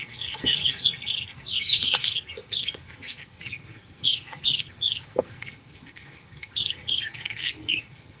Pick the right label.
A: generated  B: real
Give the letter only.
A